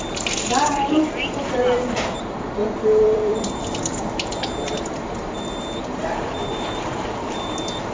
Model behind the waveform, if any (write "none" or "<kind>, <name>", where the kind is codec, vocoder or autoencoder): vocoder, BigVGAN v2